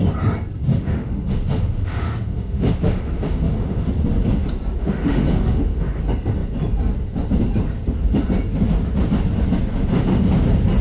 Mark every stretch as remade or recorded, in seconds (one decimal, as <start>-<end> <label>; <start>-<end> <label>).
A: 0.0-0.7 recorded; 0.7-3.9 remade; 3.9-4.8 recorded; 4.8-6.0 remade; 6.0-10.8 recorded